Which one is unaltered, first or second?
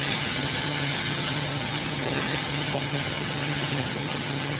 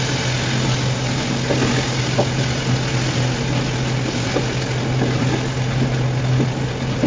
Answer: second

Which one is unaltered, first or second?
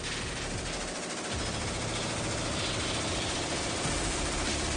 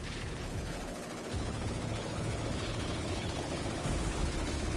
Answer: first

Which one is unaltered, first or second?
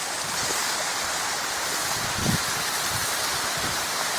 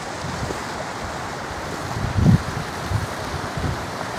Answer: second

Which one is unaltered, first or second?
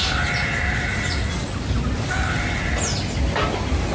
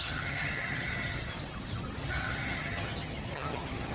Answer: first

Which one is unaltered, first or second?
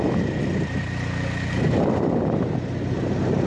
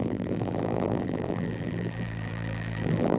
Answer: first